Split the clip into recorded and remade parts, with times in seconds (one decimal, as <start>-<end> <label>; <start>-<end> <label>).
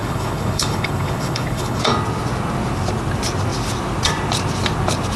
0.0-1.8 remade; 1.8-5.2 recorded